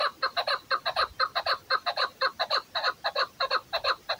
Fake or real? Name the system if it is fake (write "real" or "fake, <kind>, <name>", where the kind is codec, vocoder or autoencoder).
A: real